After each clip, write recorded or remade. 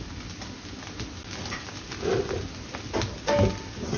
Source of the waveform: recorded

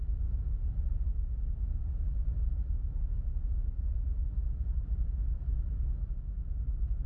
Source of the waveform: recorded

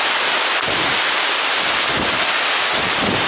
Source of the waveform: recorded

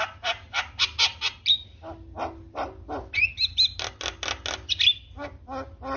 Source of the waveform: recorded